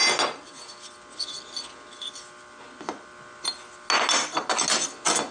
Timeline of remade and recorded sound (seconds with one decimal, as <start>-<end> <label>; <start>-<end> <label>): 0.0-5.3 recorded